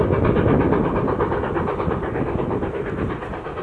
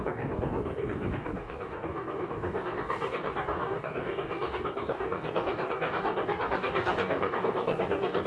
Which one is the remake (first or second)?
second